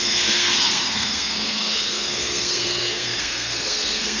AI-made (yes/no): yes